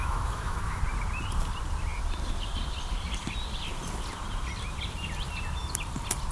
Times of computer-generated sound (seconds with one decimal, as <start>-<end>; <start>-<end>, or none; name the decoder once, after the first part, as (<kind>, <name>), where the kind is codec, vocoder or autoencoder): 0.0-0.8 (autoencoder, DAC-VAE)